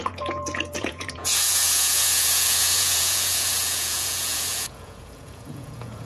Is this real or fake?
fake